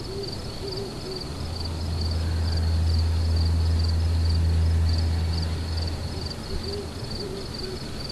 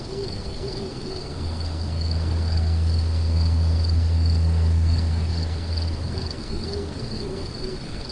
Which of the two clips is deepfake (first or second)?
second